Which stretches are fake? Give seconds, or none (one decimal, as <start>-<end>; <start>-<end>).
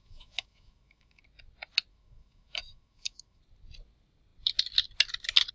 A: 0.0-1.2; 1.9-3.4